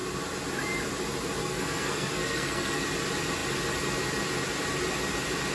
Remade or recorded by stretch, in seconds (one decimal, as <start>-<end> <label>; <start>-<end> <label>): 0.0-1.4 recorded; 1.4-2.8 remade; 2.8-5.5 recorded